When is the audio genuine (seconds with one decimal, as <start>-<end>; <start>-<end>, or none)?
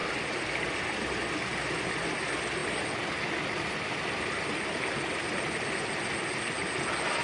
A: 0.0-7.2